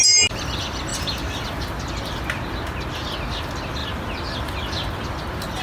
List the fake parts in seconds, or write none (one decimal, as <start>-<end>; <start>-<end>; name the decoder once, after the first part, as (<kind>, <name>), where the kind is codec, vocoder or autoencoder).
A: none